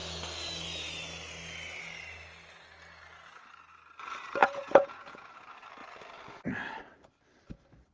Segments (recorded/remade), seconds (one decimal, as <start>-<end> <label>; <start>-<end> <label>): 0.0-4.4 recorded; 4.4-5.3 remade; 5.3-7.9 recorded